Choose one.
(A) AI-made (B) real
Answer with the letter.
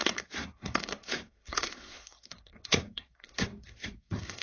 A